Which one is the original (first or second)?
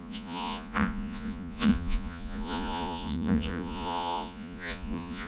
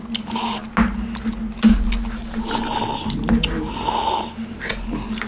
second